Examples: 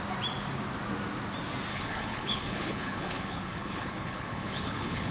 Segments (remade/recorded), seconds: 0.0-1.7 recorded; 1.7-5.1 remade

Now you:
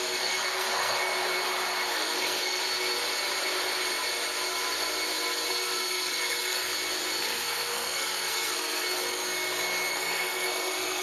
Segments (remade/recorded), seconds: 0.0-1.1 remade; 1.1-1.9 recorded; 1.9-2.6 remade; 2.6-5.5 recorded; 5.5-6.7 remade; 6.7-7.2 recorded; 7.2-9.2 remade; 9.2-9.9 recorded; 9.9-11.0 remade

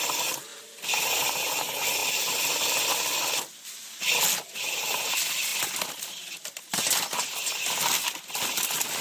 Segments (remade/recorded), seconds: 0.0-2.0 recorded; 2.0-2.9 remade; 2.9-5.5 recorded; 5.5-6.2 remade; 6.2-9.0 recorded

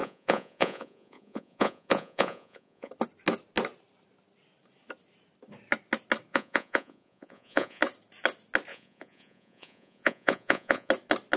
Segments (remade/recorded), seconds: 0.0-2.9 remade; 2.9-6.3 recorded; 6.3-7.8 remade; 7.8-8.7 recorded; 8.7-10.9 remade; 10.9-11.4 recorded

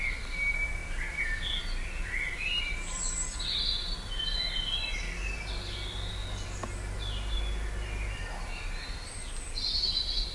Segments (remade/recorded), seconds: 0.0-10.3 recorded

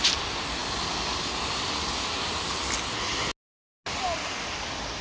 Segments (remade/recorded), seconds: 0.0-5.0 recorded

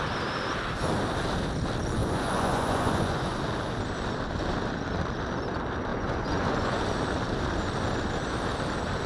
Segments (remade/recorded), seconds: 0.0-2.0 recorded; 2.0-3.4 remade; 3.4-5.9 recorded; 5.9-6.8 remade; 6.8-9.1 recorded